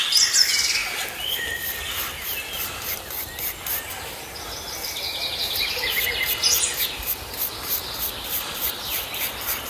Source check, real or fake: real